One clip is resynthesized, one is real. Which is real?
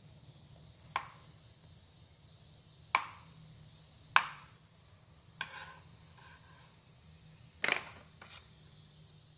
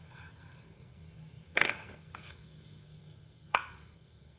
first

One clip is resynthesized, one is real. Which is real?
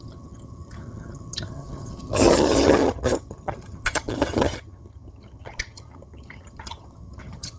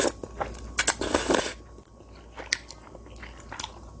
second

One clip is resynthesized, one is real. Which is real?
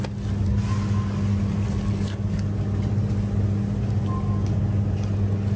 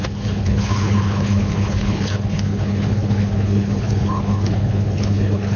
first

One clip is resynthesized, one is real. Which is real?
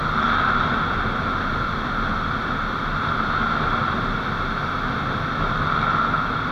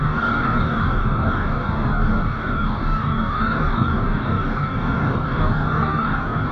first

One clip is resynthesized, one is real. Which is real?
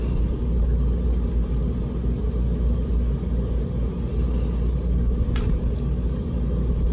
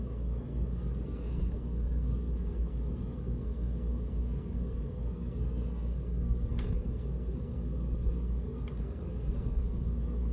first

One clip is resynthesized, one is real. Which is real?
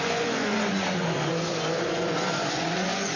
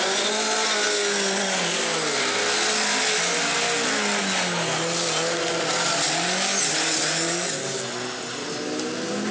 second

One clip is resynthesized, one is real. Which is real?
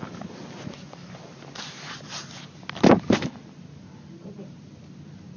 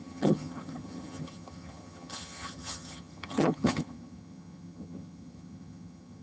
first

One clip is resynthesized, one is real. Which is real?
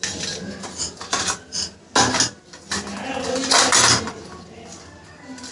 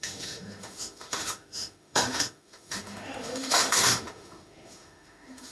first